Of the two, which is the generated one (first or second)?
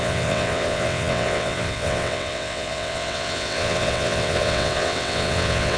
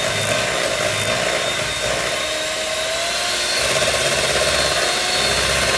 first